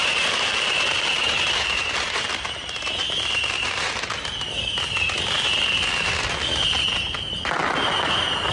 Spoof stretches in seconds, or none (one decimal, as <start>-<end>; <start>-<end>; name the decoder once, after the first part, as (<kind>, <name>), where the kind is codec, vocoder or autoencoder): 0.0-4.6 (vocoder, BigVGAN v2)

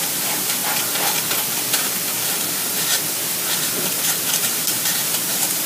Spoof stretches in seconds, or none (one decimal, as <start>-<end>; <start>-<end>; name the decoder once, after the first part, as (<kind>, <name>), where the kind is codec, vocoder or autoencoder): 0.0-0.6 (vocoder, BigVGAN v2); 4.0-5.7

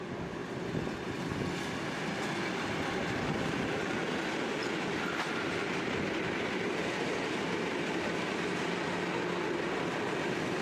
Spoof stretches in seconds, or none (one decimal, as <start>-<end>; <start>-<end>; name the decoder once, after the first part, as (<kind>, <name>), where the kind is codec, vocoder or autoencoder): 4.6-5.6 (vocoder, BigVGAN v2)

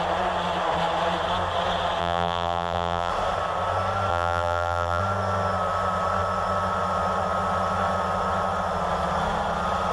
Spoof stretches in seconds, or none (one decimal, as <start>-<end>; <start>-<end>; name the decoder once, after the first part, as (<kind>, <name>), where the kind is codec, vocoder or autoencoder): 2.0-3.1 (vocoder, BigVGAN v2); 4.1-5.0

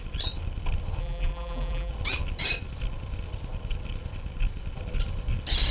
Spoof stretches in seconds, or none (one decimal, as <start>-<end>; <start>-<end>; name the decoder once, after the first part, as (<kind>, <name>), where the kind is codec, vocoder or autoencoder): 1.0-1.9 (vocoder, BigVGAN v2)

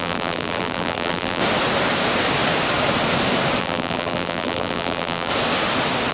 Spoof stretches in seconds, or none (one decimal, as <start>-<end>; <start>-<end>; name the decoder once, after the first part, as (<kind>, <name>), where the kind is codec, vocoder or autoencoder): 0.0-1.4 (vocoder, BigVGAN v2); 3.6-5.3

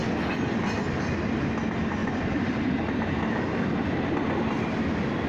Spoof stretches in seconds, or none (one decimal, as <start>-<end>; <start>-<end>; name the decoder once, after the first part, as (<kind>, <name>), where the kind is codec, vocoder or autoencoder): none

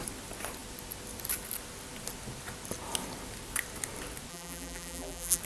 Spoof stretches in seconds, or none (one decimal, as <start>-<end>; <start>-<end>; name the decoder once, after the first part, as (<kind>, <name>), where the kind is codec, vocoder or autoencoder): 4.3-5.4 (vocoder, BigVGAN v2)